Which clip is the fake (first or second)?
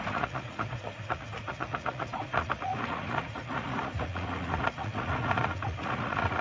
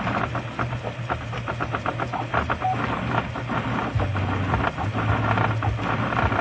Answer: first